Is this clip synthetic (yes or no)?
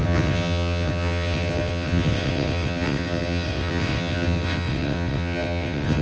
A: yes